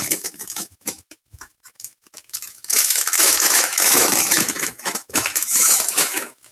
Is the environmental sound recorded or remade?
remade